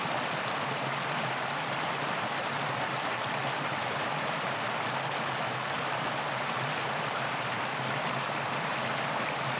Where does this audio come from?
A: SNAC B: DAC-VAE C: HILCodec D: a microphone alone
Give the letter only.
D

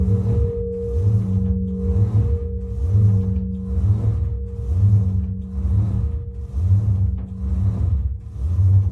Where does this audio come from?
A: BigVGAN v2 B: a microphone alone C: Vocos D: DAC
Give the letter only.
B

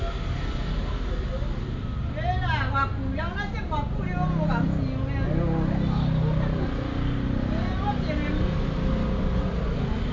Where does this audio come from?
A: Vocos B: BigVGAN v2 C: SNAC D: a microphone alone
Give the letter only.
D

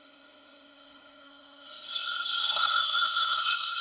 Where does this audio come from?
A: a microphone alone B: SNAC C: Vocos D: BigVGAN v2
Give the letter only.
B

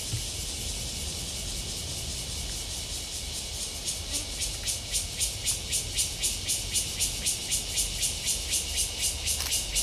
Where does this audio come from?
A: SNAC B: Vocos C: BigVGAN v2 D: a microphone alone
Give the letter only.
D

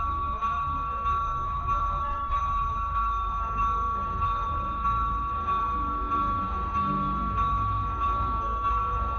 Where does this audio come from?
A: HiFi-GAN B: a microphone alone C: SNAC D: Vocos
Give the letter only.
C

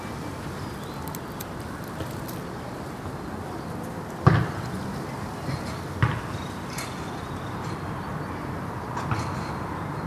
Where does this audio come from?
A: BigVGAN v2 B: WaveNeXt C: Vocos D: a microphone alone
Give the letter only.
D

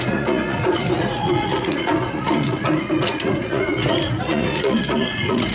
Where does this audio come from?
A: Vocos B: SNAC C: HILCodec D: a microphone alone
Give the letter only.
A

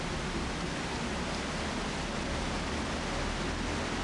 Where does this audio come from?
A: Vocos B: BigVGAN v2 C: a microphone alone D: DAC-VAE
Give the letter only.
C